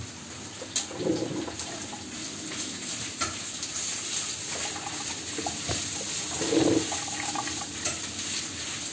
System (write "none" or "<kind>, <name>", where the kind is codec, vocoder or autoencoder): none